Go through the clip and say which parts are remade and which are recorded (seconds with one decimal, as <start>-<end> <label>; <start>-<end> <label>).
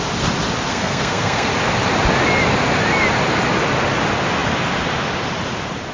0.0-0.7 recorded; 0.7-1.5 remade; 1.5-5.9 recorded